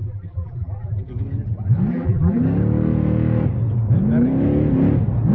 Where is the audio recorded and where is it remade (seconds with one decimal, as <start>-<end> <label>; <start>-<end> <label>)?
0.0-1.1 remade; 1.1-1.9 recorded; 1.9-2.4 remade; 2.4-5.3 recorded